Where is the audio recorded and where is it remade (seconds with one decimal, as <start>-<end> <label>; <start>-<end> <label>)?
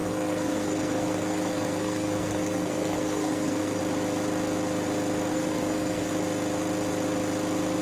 0.0-3.8 remade; 3.8-5.3 recorded; 5.3-6.1 remade; 6.1-7.8 recorded